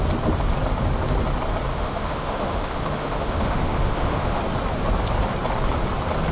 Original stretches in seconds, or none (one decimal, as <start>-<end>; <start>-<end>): 0.0-1.7; 4.4-6.3

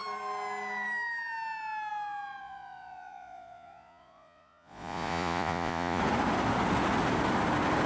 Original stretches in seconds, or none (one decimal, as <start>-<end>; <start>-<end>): 0.0-2.4; 6.0-7.9

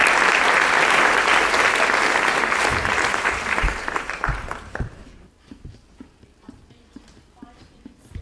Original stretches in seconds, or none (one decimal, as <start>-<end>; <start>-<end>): 0.0-2.7; 7.6-8.2

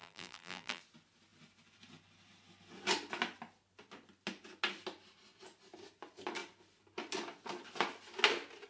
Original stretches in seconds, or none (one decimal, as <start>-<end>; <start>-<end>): 0.8-8.7

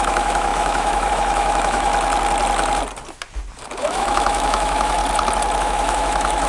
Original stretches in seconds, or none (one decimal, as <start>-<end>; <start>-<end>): 1.9-3.8; 5.0-5.6

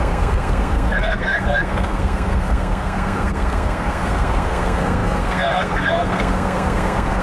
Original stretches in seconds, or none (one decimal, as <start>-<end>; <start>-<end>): none

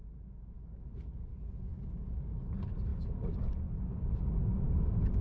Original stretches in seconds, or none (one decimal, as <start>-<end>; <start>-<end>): 0.0-5.2